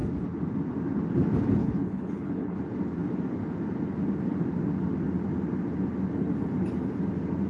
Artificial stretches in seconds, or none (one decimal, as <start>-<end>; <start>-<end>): 1.6-2.6